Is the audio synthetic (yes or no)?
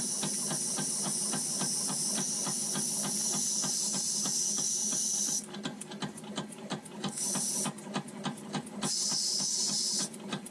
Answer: no